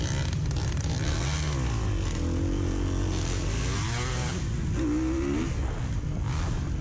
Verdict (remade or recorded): recorded